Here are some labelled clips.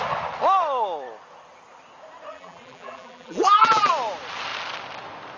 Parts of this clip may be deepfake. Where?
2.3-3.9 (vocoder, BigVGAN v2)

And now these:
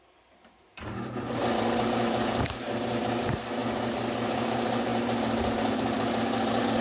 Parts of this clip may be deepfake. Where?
0.0-3.6 (vocoder, BigVGAN v2); 4.3-6.8

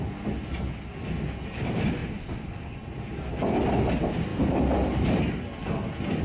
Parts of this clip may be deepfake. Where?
2.0-3.8 (vocoder, BigVGAN v2); 4.3-5.2

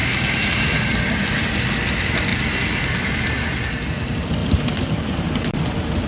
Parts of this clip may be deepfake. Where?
2.3-3.7 (vocoder, BigVGAN v2); 4.4-5.6

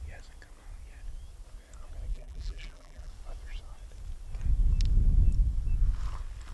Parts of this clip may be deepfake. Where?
2.1-3.1 (vocoder, BigVGAN v2)

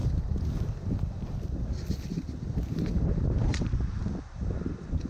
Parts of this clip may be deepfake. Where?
3.5-4.0 (vocoder, BigVGAN v2)

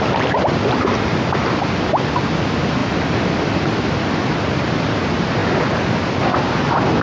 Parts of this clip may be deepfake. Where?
none